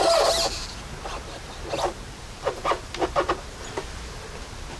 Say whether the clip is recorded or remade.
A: recorded